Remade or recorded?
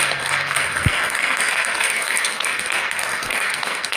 remade